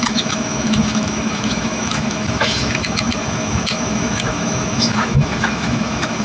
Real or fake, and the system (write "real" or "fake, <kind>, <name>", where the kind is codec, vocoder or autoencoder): fake, autoencoder, DAC-VAE